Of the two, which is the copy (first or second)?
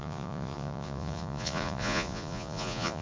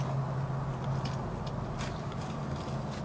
first